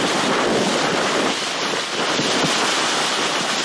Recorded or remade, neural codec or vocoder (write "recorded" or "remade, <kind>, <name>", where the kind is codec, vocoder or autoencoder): recorded